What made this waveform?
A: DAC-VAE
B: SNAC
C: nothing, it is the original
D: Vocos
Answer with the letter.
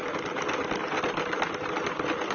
C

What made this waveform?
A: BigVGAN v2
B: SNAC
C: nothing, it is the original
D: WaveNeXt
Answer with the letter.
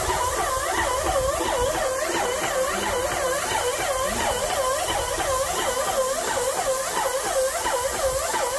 C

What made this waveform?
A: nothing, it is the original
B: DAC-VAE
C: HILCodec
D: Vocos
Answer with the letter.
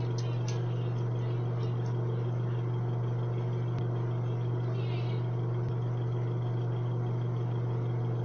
A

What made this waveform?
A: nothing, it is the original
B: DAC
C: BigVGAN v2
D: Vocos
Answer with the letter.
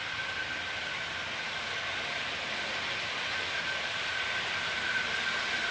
A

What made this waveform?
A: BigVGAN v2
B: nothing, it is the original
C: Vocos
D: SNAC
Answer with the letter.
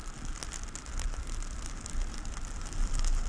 B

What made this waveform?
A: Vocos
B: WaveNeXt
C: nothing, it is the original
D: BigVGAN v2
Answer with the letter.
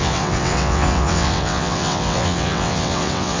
B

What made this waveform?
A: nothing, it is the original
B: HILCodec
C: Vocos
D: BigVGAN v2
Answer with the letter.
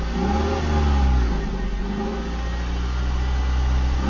A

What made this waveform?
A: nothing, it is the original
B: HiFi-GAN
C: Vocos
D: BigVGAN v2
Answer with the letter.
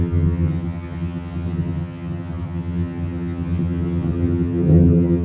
B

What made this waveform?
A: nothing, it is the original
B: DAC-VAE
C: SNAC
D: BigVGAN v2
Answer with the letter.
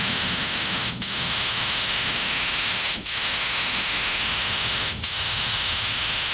B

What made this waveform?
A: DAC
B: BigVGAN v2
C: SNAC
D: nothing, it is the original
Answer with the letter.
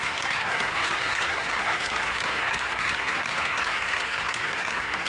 C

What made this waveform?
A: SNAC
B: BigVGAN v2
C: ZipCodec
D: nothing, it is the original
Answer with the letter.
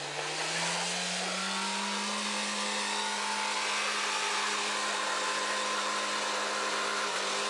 D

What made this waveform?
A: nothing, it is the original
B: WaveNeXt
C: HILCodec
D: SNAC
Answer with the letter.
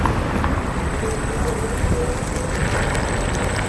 A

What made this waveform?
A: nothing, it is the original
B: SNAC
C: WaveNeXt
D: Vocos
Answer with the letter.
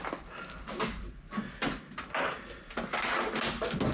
A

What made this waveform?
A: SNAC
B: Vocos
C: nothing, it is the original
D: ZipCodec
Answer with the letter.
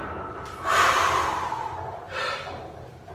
C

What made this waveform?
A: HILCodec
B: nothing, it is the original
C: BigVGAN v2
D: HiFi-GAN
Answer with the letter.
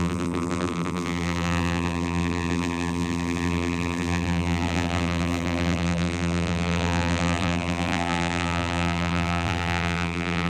C